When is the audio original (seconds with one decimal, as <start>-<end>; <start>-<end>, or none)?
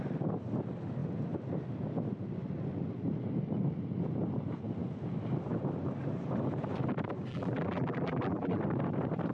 0.0-7.3; 8.6-9.3